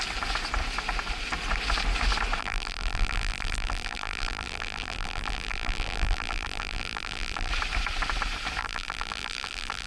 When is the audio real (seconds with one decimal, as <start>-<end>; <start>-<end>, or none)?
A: 0.0-2.4; 7.5-8.6